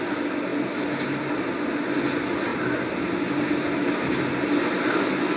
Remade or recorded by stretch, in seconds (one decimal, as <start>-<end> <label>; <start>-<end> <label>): 0.0-5.4 recorded